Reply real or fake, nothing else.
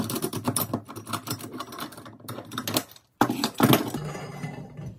real